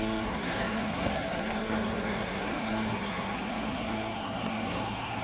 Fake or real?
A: fake